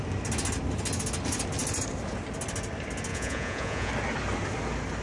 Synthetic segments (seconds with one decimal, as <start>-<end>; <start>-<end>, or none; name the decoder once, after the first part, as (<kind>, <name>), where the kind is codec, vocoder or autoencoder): 3.1-3.9 (vocoder, Vocos)